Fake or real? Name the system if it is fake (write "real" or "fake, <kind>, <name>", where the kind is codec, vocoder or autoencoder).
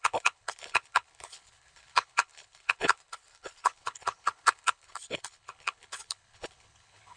fake, codec, HILCodec